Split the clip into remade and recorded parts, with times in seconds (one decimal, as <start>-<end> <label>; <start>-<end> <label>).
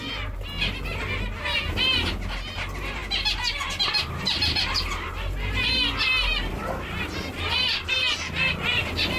0.0-6.3 recorded; 6.3-8.6 remade; 8.6-9.2 recorded